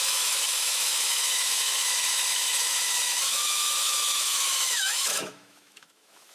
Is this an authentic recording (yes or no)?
no